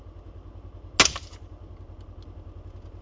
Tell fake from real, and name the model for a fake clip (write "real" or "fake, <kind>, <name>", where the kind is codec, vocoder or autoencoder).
real